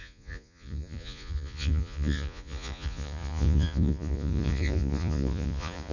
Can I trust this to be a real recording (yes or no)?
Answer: no